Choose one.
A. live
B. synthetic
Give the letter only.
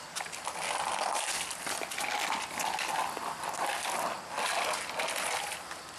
A